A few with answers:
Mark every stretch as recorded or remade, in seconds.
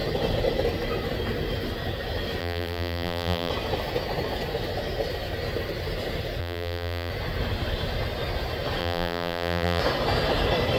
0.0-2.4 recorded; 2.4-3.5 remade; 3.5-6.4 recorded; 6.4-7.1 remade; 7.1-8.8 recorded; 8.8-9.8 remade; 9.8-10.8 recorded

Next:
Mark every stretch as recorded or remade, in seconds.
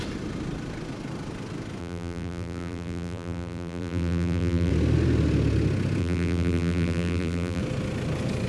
0.0-1.8 recorded; 1.8-4.7 remade; 4.7-6.0 recorded; 6.0-7.6 remade; 7.6-8.5 recorded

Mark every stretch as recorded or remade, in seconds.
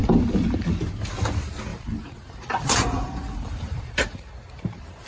0.0-1.7 recorded; 1.7-5.1 remade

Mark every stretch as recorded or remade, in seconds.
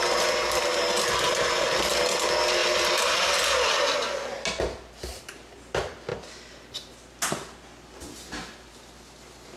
0.0-2.6 recorded; 2.6-3.7 remade; 3.7-9.6 recorded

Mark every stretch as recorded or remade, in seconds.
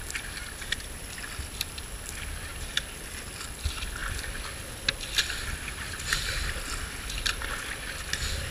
0.0-8.5 recorded